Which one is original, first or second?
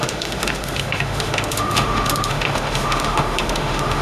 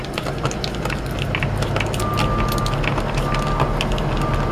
second